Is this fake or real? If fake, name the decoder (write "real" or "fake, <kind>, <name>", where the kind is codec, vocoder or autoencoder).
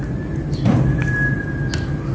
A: real